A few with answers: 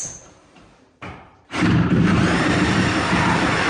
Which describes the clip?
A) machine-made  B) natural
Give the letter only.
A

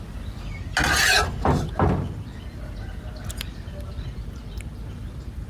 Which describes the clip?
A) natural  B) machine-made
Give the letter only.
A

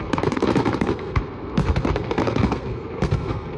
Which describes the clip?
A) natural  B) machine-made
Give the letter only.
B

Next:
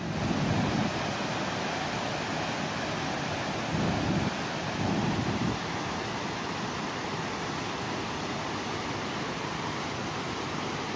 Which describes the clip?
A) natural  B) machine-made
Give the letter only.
A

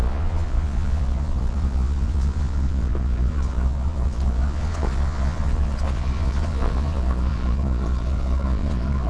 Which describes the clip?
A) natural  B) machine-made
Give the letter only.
B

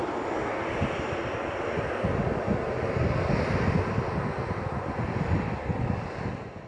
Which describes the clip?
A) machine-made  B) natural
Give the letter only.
B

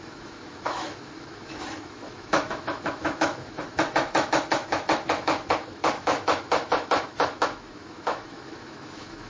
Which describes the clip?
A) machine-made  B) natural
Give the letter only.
A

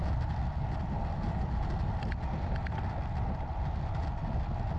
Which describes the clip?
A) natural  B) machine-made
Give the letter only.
A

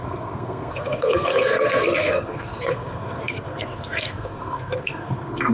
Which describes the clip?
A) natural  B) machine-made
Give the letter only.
B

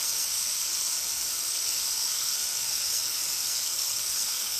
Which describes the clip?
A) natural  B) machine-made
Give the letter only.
B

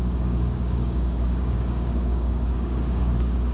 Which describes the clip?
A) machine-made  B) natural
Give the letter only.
A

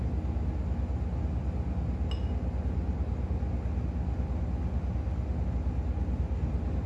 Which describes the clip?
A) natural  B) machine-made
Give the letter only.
A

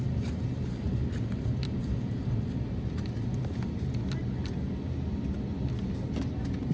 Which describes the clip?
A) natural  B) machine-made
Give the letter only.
A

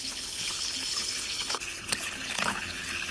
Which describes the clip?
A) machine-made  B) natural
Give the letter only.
A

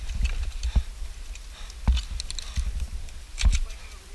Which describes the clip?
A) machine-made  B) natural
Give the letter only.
B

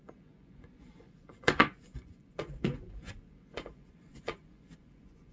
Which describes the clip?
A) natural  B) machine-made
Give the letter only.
B